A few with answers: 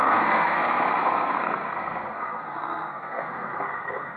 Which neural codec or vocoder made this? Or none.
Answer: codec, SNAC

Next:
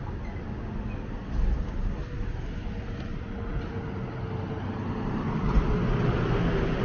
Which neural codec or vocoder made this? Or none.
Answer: none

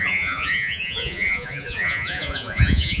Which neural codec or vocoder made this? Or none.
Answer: vocoder, Vocos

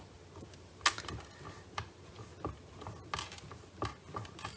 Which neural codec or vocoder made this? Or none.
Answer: none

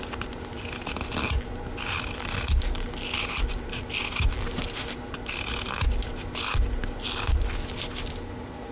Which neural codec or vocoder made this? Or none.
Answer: none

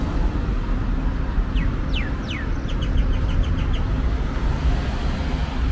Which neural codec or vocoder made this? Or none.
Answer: none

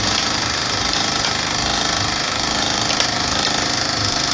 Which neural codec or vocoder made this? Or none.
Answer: vocoder, BigVGAN v2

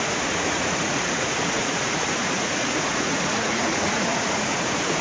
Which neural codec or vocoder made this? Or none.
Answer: vocoder, Vocos